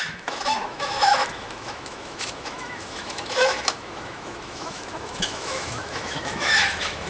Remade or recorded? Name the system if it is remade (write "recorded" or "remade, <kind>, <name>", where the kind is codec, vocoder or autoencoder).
remade, autoencoder, DAC-VAE